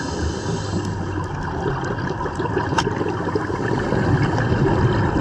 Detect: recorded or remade recorded